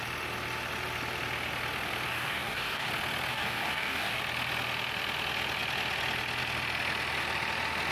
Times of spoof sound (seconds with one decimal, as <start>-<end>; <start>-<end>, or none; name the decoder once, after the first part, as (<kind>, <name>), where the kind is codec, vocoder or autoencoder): 2.1-2.9 (codec, DAC); 3.3-4.2